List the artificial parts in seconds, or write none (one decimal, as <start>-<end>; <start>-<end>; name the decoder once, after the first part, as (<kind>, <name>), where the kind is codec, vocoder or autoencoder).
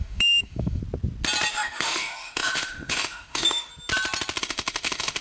0.0-0.8 (autoencoder, DAC-VAE); 1.5-3.7; 4.4-5.2